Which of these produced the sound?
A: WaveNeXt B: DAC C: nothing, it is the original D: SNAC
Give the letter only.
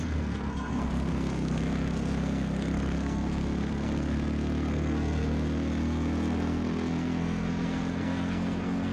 D